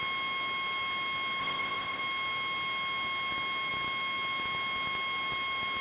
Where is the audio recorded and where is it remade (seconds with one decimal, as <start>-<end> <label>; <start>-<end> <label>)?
0.0-1.4 recorded; 1.4-2.0 remade; 2.0-5.8 recorded

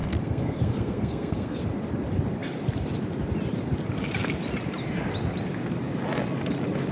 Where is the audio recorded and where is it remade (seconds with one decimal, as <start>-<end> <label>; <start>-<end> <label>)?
0.0-1.6 remade; 1.6-6.9 recorded

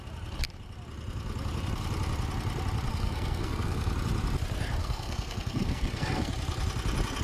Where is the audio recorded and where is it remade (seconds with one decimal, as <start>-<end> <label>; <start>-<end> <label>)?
0.0-2.9 recorded; 2.9-3.9 remade; 3.9-4.8 recorded; 4.8-6.3 remade; 6.3-7.2 recorded

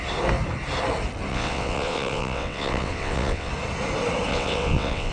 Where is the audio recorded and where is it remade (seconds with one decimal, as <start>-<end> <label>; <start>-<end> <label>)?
0.0-1.3 recorded; 1.3-3.5 remade; 3.5-4.3 recorded; 4.3-5.1 remade

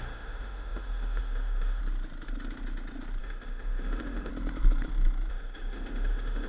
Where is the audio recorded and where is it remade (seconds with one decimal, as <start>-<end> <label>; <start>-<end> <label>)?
0.0-1.8 remade; 1.8-3.2 recorded; 3.2-4.3 remade; 4.3-5.3 recorded; 5.3-6.5 remade